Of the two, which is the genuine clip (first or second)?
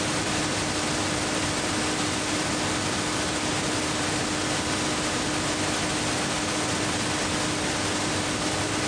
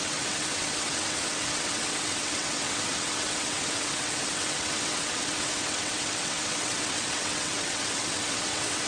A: first